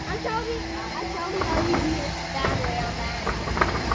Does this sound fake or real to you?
real